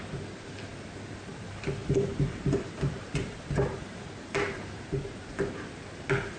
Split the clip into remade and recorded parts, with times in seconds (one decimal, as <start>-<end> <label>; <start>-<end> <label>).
0.0-1.8 recorded; 1.8-4.9 remade; 4.9-6.4 recorded